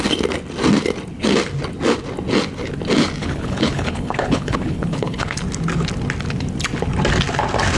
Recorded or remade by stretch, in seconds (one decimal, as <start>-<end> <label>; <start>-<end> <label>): 0.0-3.2 recorded; 3.2-5.4 remade; 5.4-7.8 recorded